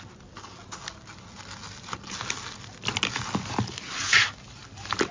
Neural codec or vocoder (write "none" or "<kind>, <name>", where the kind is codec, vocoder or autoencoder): none